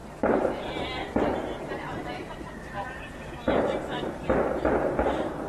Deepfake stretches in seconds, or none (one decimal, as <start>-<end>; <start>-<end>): 0.0-0.5; 1.0-3.3